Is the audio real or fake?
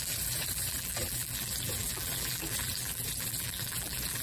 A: fake